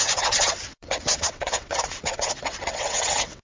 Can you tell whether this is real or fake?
fake